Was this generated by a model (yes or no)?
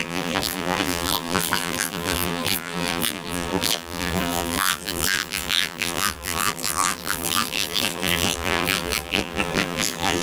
yes